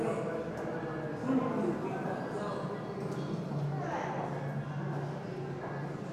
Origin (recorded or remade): recorded